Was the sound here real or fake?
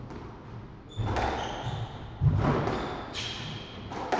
real